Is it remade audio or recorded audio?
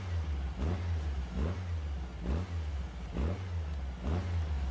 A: recorded